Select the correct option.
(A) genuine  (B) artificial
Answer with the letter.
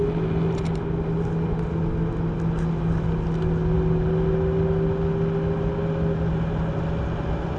A